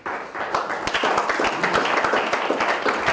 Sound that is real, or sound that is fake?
real